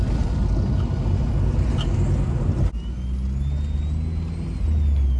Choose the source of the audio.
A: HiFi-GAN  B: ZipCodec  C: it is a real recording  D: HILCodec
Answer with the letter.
C